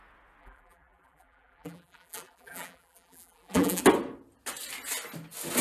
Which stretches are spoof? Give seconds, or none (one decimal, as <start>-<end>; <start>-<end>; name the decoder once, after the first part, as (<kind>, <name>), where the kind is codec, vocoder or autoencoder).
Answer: 0.4-3.8 (vocoder, BigVGAN v2)